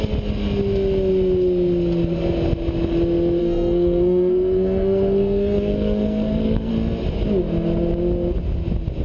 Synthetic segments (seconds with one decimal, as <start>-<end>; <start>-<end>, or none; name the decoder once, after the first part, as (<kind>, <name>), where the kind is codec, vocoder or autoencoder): 3.4-6.7 (codec, SNAC)